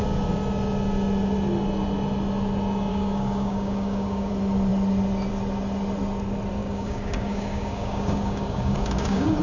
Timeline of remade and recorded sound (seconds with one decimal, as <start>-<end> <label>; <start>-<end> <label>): 0.0-2.9 recorded; 2.9-4.3 remade; 4.3-6.6 recorded; 6.6-9.4 remade